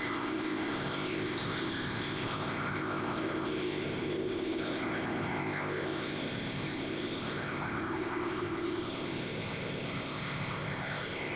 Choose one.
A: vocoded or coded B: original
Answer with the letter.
A